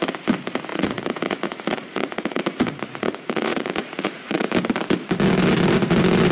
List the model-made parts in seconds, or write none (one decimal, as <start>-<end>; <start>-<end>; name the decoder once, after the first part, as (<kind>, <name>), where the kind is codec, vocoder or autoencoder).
0.7-4.5 (vocoder, Vocos)